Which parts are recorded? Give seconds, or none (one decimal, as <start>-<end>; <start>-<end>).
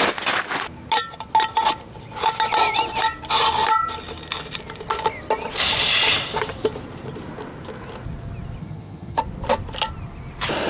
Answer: 0.0-8.6; 9.2-10.7